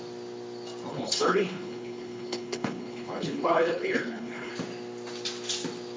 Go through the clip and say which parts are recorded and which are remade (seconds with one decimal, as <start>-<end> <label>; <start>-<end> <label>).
0.0-0.9 recorded; 0.9-4.5 remade; 4.5-6.0 recorded